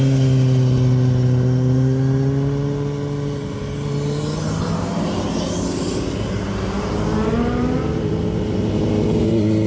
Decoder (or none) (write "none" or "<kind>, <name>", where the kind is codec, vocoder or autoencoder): none